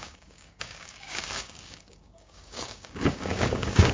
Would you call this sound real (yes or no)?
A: no